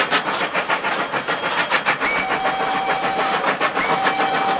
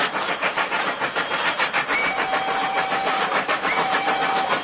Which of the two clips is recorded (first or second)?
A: first